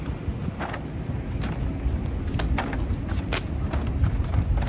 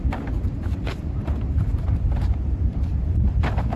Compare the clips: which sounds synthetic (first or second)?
second